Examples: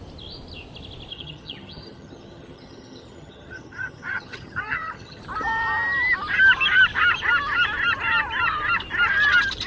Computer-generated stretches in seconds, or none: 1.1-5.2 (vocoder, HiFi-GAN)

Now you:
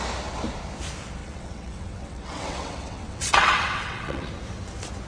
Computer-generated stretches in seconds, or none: 1.2-4.3 (vocoder, WaveNeXt)

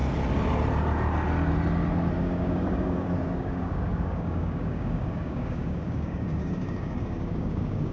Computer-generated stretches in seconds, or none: 2.2-7.9 (codec, DAC)